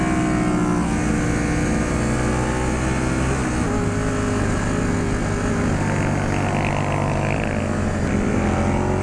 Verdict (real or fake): real